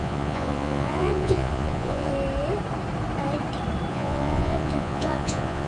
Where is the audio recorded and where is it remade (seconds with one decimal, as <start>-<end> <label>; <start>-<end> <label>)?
0.0-2.1 remade; 2.1-3.9 recorded; 3.9-5.7 remade